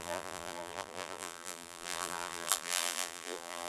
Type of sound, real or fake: fake